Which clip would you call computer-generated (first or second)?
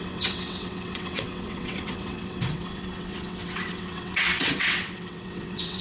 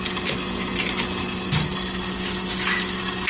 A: first